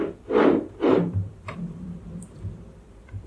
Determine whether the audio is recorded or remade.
remade